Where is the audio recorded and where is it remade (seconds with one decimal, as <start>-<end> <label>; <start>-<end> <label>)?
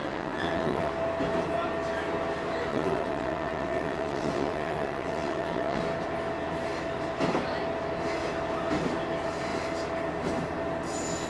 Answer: 0.0-0.9 remade; 0.9-2.7 recorded; 2.7-5.8 remade; 5.8-11.3 recorded